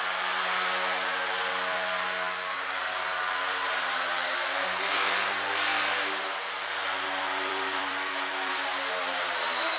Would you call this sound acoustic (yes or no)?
no